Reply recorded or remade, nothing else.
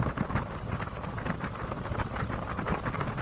remade